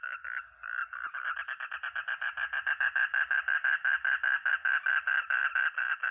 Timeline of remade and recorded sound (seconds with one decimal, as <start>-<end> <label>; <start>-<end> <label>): 0.0-0.8 recorded; 0.8-4.5 remade; 4.5-6.1 recorded